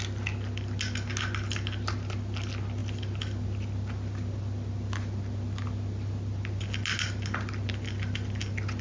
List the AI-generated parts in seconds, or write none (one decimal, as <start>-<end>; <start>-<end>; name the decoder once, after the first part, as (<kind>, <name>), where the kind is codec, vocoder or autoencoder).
none

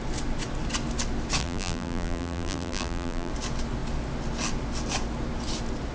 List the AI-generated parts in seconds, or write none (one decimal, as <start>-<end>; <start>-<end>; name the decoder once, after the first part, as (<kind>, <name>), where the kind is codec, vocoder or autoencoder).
1.4-3.3 (vocoder, BigVGAN v2)

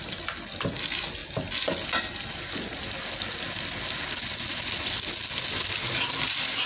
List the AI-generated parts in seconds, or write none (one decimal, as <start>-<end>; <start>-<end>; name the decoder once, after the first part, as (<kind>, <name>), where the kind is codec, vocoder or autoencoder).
none